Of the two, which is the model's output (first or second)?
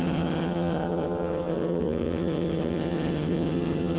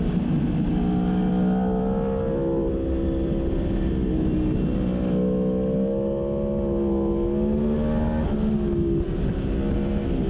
first